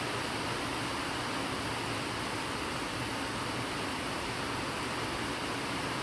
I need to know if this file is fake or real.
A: real